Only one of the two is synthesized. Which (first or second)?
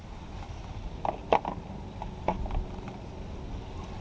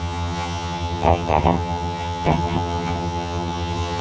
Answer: second